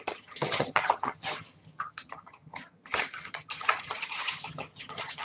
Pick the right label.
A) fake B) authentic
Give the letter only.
A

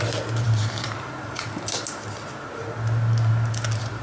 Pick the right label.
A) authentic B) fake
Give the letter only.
A